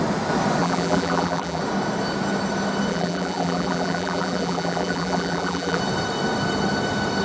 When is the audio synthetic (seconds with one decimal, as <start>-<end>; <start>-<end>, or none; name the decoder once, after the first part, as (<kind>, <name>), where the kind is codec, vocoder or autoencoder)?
0.6-1.6 (vocoder, BigVGAN v2); 2.9-5.8